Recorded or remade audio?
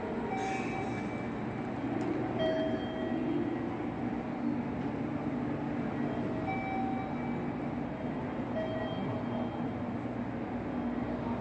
recorded